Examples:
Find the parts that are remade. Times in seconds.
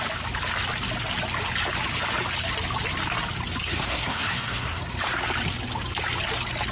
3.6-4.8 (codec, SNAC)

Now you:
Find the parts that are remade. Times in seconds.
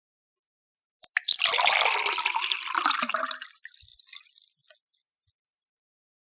none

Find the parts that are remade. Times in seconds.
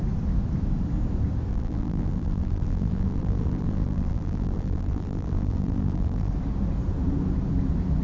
1.5-6.3 (vocoder, BigVGAN v2)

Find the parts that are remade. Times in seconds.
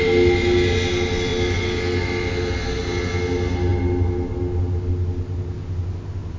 none